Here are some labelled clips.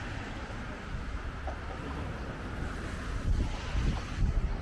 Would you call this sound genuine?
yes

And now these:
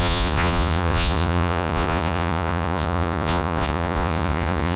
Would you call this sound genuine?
no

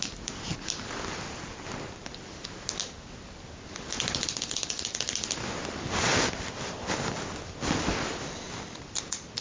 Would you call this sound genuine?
yes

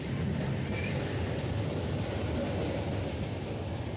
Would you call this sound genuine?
yes